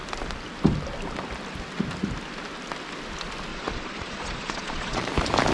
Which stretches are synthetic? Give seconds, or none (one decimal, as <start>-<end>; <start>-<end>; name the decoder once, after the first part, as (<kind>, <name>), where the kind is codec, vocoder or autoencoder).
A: 3.5-5.1 (vocoder, Vocos)

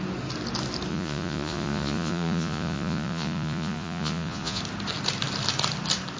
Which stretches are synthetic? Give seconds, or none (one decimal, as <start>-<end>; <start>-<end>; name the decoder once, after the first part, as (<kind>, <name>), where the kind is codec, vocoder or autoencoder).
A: 0.9-4.6 (vocoder, Vocos)